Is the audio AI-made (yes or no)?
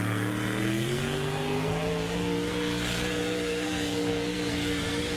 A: yes